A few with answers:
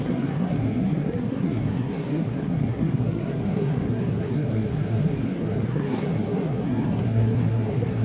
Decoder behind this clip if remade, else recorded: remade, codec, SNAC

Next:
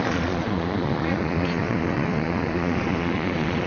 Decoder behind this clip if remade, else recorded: remade, vocoder, Vocos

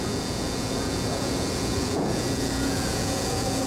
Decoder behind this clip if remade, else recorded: remade, vocoder, Vocos